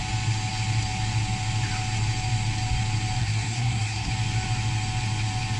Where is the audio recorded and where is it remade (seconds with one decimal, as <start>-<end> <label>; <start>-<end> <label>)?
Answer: 0.0-3.2 recorded; 3.2-4.1 remade; 4.1-5.6 recorded

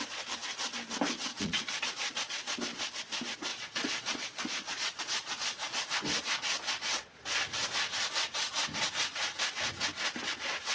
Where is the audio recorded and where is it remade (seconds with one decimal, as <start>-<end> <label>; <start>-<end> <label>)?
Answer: 0.0-1.3 recorded; 1.3-1.8 remade; 1.8-3.5 recorded; 3.5-5.8 remade; 5.8-10.7 recorded

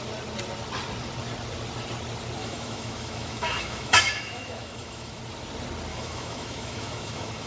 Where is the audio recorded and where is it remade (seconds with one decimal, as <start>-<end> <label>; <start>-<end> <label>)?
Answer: 0.0-2.4 recorded; 2.4-5.2 remade; 5.2-5.9 recorded; 5.9-7.5 remade

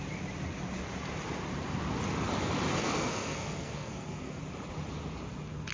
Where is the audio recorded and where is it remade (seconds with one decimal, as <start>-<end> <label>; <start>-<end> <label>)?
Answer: 0.0-2.8 recorded; 2.8-4.4 remade; 4.4-5.7 recorded

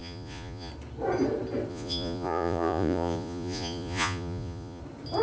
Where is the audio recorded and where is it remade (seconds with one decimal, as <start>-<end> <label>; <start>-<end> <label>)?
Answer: 0.0-0.7 remade; 0.7-1.7 recorded; 1.7-4.8 remade; 4.8-5.2 recorded

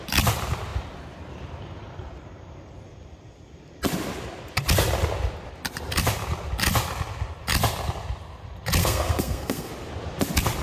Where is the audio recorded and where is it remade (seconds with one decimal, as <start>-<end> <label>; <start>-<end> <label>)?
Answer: 0.0-8.8 recorded; 8.8-9.7 remade; 9.7-10.6 recorded

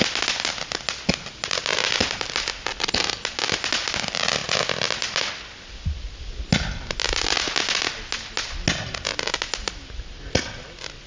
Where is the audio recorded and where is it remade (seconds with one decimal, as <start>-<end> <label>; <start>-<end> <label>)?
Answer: 0.0-11.1 recorded